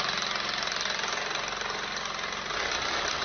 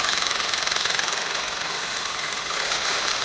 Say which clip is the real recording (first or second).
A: first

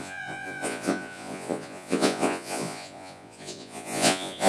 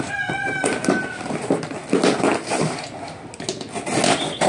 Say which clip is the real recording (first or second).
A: second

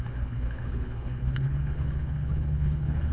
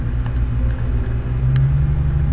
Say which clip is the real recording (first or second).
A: second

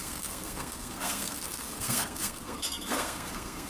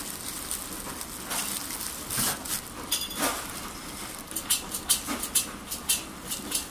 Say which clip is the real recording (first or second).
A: second